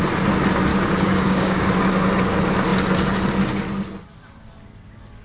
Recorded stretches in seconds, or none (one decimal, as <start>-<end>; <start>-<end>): 0.0-0.7; 1.7-5.2